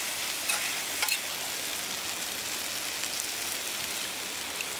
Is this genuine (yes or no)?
yes